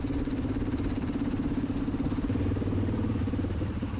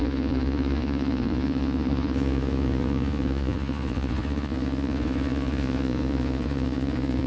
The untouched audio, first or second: first